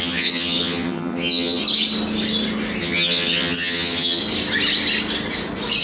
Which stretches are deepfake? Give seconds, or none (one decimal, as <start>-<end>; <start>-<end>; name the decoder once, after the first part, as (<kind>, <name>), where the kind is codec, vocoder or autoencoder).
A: 0.0-1.6 (vocoder, HiFi-GAN); 2.8-4.2